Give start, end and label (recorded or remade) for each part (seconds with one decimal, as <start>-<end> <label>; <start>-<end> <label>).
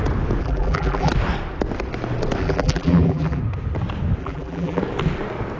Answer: 0.0-0.4 recorded; 0.4-1.1 remade; 1.1-2.4 recorded; 2.4-3.4 remade; 3.4-4.2 recorded; 4.2-4.8 remade; 4.8-5.6 recorded